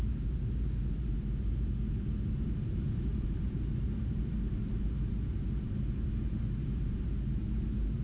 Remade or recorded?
remade